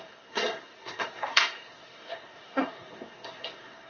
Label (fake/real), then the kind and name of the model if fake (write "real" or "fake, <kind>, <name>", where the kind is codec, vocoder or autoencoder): fake, codec, SNAC